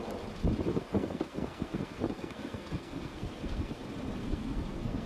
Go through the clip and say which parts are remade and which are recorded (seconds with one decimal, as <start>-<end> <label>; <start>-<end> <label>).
0.0-0.7 recorded; 0.7-3.8 remade; 3.8-4.2 recorded; 4.2-5.1 remade